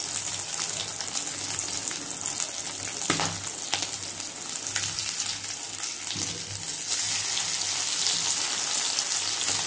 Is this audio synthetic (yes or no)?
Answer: no